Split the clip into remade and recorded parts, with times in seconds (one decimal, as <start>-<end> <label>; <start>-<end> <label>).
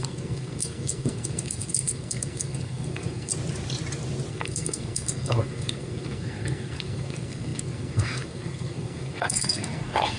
0.0-3.3 remade; 3.3-4.3 recorded; 4.3-10.2 remade